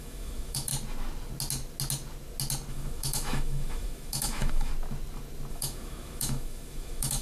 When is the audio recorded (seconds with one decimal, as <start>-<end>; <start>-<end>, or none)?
0.7-2.7; 4.7-5.5